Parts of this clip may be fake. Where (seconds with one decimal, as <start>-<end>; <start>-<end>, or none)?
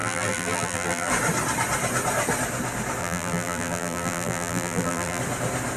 0.0-1.1; 3.0-5.2